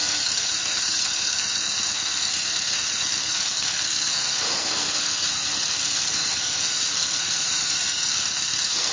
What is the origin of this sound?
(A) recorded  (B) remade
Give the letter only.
B